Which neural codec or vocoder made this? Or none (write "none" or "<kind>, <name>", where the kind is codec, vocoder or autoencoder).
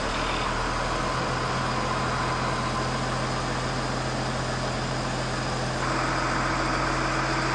none